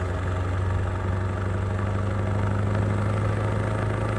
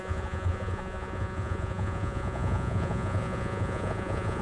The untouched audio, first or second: first